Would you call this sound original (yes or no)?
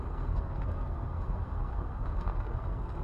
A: no